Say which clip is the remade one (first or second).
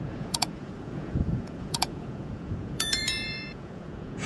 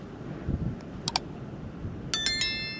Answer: first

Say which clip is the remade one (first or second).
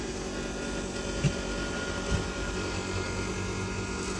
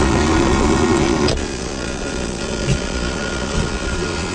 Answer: second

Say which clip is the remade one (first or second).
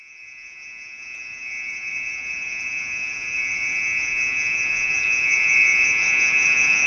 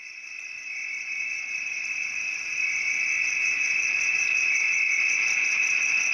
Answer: first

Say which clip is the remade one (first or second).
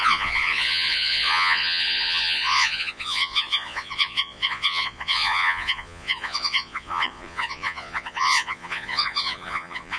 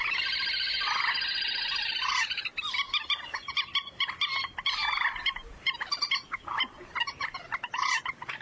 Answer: first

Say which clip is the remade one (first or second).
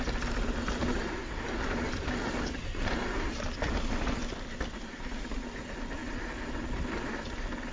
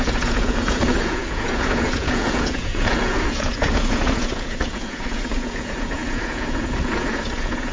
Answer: second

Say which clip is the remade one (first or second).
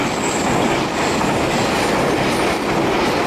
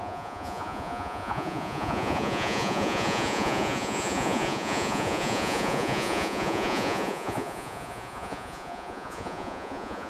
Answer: second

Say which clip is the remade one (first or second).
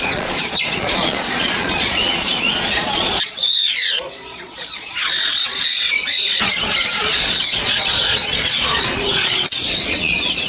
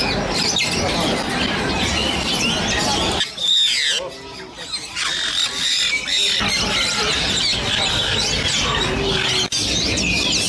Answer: first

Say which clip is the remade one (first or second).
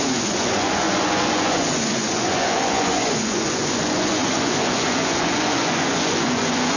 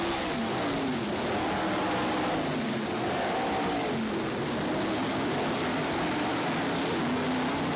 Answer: first